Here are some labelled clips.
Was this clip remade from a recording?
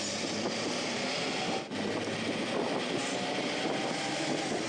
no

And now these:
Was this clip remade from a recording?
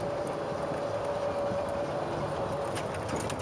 no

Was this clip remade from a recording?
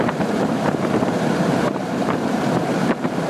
yes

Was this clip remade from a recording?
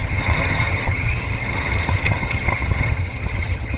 yes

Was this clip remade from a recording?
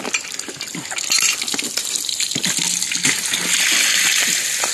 no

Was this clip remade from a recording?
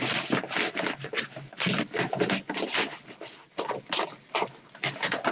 no